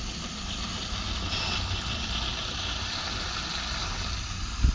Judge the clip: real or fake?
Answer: real